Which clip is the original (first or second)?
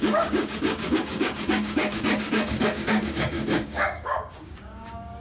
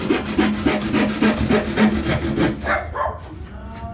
second